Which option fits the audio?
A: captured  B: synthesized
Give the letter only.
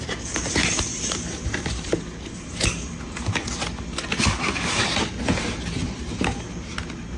A